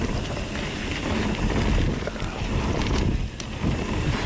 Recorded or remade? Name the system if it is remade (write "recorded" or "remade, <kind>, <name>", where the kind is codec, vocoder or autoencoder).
recorded